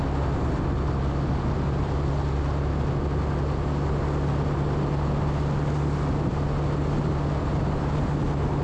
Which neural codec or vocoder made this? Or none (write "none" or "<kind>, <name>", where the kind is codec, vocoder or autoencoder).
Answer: none